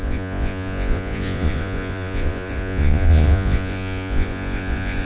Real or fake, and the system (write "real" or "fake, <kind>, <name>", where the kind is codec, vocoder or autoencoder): fake, vocoder, Vocos